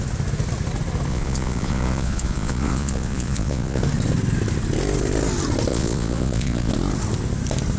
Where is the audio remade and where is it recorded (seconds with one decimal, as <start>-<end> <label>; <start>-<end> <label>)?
0.0-1.1 recorded; 1.1-3.8 remade; 3.8-5.7 recorded; 5.7-6.7 remade; 6.7-7.8 recorded